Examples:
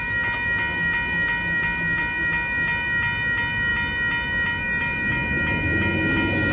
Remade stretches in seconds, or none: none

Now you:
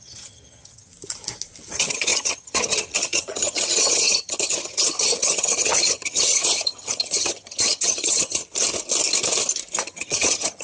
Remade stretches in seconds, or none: 0.0-0.9 (vocoder, HiFi-GAN); 1.7-8.4; 9.8-10.6

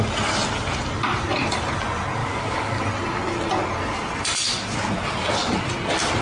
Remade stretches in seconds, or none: 2.2-2.8 (codec, DAC)